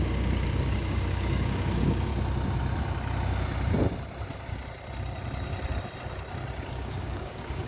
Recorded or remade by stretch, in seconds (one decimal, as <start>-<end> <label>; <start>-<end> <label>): 0.0-2.1 remade; 2.1-6.7 recorded; 6.7-7.7 remade